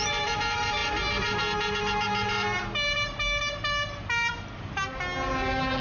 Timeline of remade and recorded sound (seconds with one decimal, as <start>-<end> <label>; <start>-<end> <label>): 0.0-5.8 recorded